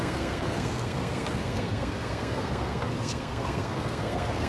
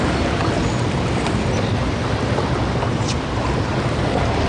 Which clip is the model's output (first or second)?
first